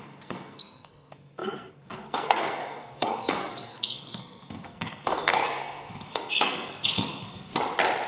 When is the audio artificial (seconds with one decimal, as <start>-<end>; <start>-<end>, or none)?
0.0-7.5